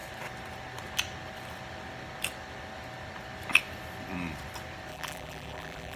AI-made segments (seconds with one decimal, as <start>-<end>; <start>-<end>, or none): 4.9-6.0